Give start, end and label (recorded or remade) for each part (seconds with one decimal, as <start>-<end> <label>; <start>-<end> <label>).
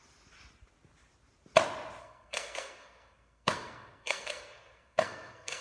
0.0-2.0 recorded; 2.0-5.6 remade